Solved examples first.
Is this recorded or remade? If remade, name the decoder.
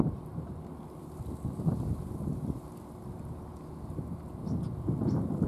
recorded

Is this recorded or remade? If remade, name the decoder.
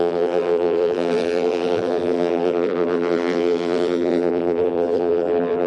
remade, vocoder, BigVGAN v2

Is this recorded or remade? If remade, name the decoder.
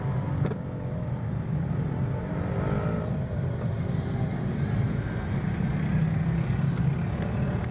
recorded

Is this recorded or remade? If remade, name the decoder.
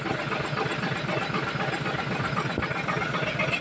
recorded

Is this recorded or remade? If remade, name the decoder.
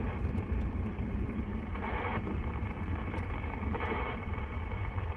remade, vocoder, BigVGAN v2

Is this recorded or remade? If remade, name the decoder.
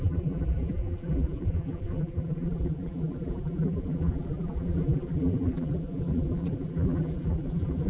remade, vocoder, BigVGAN v2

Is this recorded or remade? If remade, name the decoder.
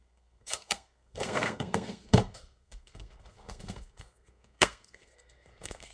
remade, codec, SNAC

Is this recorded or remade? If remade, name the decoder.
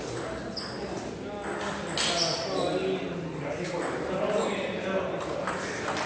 recorded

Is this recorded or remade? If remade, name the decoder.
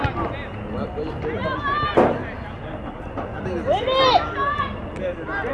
recorded